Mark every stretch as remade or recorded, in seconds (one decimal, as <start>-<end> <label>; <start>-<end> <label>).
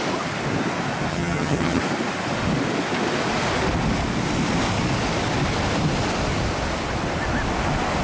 0.0-1.1 recorded; 1.1-1.8 remade; 1.8-8.0 recorded